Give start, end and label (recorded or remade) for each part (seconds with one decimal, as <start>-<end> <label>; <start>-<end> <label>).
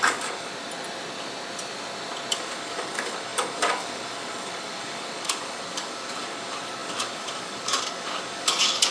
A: 0.0-0.5 remade; 0.5-2.3 recorded; 2.3-8.9 remade